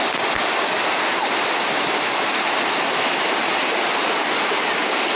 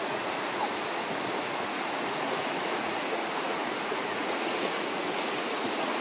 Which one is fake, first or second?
second